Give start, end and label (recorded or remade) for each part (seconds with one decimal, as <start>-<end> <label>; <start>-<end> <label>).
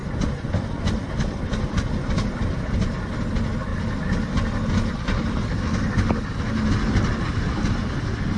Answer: 0.0-3.1 remade; 3.1-8.4 recorded